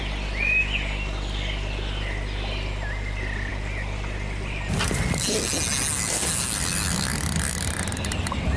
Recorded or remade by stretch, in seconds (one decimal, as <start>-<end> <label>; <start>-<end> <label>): 0.0-8.6 recorded